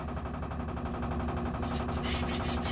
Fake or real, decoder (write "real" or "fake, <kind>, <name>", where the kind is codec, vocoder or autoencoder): real